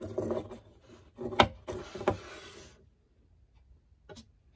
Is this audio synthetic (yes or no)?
no